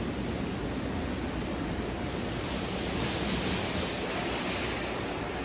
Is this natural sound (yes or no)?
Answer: yes